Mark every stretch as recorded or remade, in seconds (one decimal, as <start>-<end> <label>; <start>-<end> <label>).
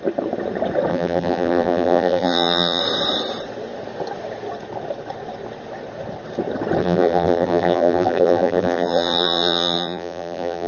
0.0-0.9 recorded; 0.9-2.8 remade; 2.8-6.8 recorded; 6.8-10.7 remade